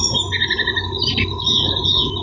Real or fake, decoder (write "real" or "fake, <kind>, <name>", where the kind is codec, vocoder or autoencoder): real